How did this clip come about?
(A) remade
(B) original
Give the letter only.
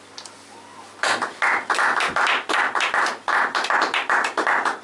B